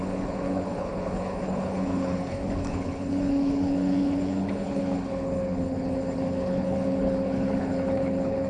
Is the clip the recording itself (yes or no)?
no